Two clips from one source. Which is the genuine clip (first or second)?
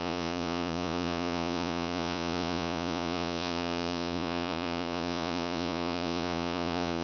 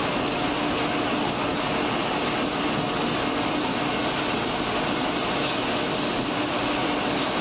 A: second